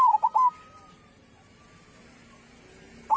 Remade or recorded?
recorded